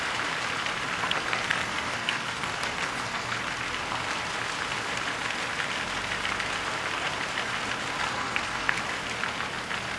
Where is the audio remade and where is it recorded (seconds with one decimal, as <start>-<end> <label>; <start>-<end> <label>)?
0.0-1.0 recorded; 1.0-3.4 remade; 3.4-8.1 recorded; 8.1-8.8 remade; 8.8-10.0 recorded